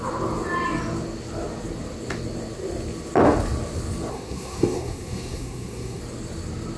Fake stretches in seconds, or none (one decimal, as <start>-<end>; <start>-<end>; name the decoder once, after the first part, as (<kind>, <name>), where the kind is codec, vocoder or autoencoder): 4.1-6.0 (codec, SNAC)